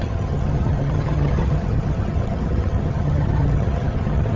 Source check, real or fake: fake